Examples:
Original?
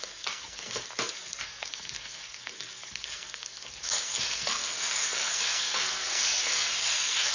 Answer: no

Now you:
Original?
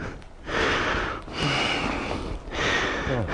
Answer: yes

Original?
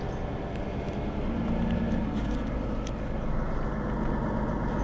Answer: yes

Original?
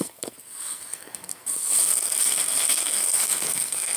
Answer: no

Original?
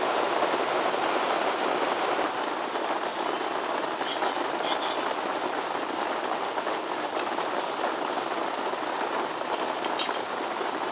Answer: yes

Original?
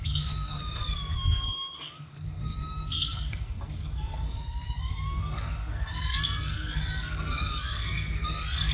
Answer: no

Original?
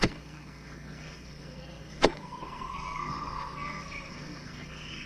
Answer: no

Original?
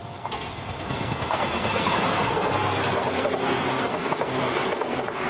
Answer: no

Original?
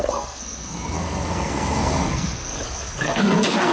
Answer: no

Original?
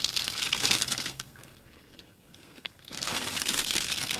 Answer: no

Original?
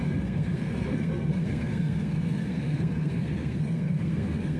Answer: no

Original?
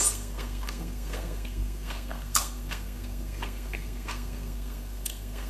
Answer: no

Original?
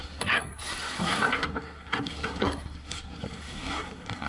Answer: no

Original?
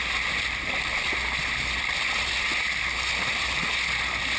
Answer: yes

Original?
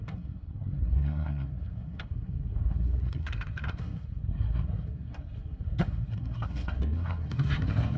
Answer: no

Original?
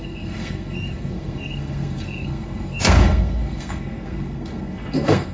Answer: no